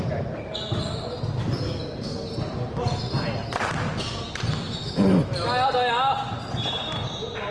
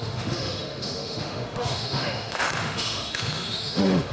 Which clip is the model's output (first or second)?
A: second